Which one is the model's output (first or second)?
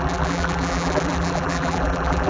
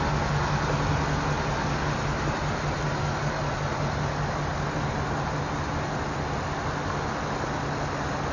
first